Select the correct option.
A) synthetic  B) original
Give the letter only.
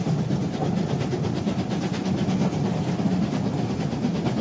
B